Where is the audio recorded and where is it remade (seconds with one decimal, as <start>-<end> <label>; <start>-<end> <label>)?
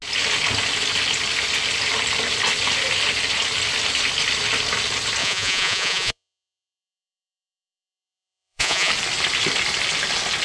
0.0-5.2 recorded; 5.2-8.9 remade; 8.9-10.4 recorded